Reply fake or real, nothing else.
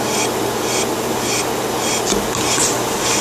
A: real